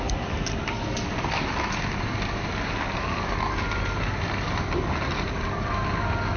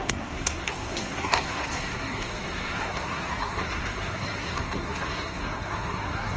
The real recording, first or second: first